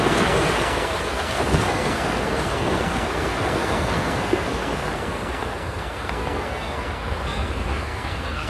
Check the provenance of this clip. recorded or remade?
remade